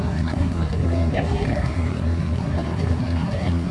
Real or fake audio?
fake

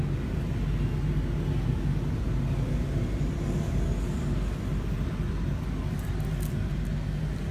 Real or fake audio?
real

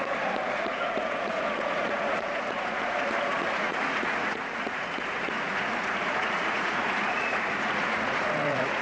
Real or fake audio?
fake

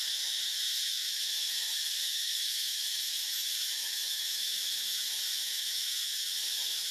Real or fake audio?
fake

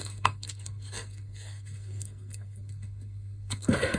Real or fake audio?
fake